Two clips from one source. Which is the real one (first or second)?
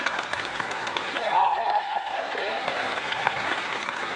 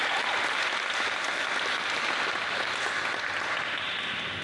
second